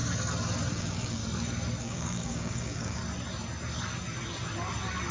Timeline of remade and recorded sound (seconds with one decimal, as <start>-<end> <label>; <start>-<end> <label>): 0.0-0.7 recorded; 0.7-1.2 remade; 1.2-1.8 recorded; 1.8-3.0 remade; 3.0-5.1 recorded